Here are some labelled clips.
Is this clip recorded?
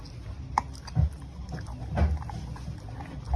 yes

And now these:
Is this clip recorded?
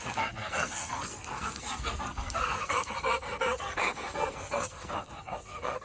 no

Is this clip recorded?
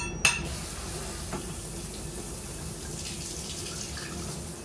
yes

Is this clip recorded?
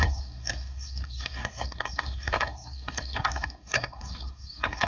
no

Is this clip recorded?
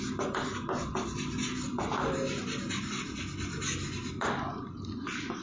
yes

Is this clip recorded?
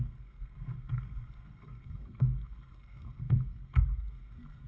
no